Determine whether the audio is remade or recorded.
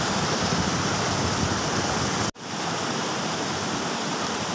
recorded